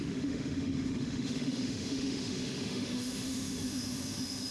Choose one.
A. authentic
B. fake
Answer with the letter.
B